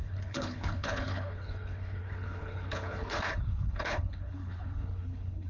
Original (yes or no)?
no